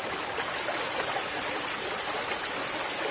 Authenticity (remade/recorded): recorded